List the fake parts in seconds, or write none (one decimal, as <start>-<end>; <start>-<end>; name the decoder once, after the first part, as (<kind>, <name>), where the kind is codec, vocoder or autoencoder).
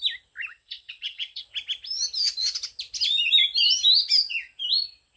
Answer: 0.5-1.4 (vocoder, WaveNeXt)